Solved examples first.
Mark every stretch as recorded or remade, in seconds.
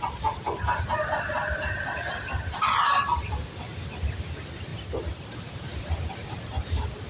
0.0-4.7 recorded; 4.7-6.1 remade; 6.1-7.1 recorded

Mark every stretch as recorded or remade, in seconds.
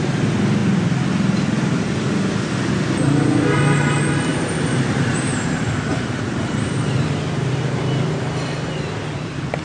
0.0-4.3 recorded; 4.3-5.5 remade; 5.5-5.9 recorded; 5.9-9.6 remade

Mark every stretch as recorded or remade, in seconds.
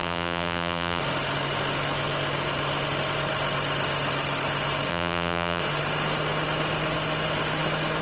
0.0-1.0 remade; 1.0-4.9 recorded; 4.9-5.6 remade; 5.6-8.0 recorded